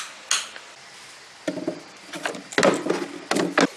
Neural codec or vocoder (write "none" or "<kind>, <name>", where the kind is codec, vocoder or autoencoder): none